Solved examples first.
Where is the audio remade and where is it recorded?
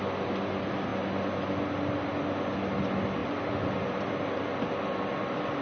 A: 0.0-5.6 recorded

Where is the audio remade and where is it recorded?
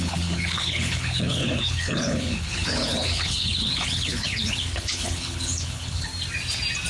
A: 0.0-6.1 remade; 6.1-6.9 recorded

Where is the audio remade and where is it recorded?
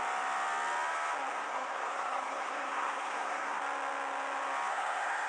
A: 0.0-1.3 recorded; 1.3-3.6 remade; 3.6-4.7 recorded; 4.7-5.3 remade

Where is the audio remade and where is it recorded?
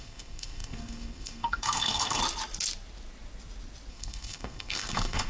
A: 0.0-2.2 remade; 2.2-3.9 recorded; 3.9-5.3 remade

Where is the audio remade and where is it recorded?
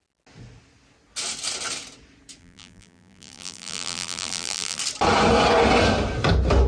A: 0.0-2.4 recorded; 2.4-4.8 remade; 4.8-6.7 recorded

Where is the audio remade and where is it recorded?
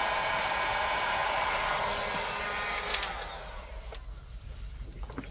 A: 0.0-5.3 recorded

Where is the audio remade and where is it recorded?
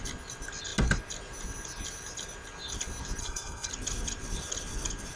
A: 0.0-3.2 recorded; 3.2-3.7 remade; 3.7-5.2 recorded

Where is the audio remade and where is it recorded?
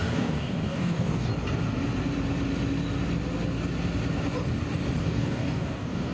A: 0.0-1.3 remade; 1.3-5.0 recorded; 5.0-6.1 remade